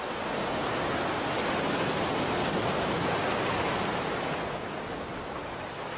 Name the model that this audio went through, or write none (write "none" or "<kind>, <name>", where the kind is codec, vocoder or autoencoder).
none